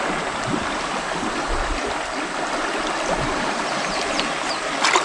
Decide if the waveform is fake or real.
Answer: real